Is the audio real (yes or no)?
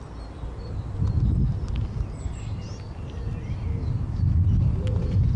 yes